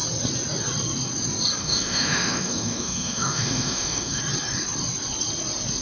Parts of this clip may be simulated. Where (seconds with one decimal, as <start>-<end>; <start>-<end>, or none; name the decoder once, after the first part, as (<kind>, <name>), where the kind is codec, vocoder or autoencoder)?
1.6-4.2 (autoencoder, DAC-VAE)